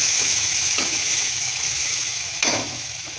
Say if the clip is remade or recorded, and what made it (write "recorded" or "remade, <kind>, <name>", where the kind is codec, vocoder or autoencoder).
remade, autoencoder, DAC-VAE